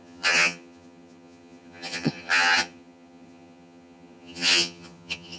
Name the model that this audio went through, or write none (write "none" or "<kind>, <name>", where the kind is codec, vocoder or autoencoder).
vocoder, HiFi-GAN